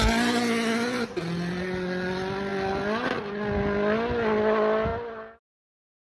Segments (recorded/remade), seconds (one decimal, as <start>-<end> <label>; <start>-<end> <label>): 0.0-6.1 recorded